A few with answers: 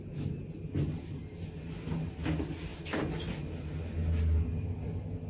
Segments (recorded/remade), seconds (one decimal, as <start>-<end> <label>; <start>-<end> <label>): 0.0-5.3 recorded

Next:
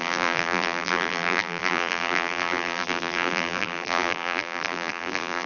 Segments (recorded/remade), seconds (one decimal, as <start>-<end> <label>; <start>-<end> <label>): 0.0-5.5 remade

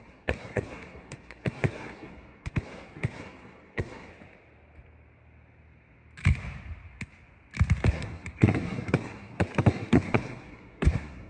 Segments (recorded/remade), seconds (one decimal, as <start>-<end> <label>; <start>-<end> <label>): 0.0-4.1 remade; 4.1-7.9 recorded; 7.9-11.3 remade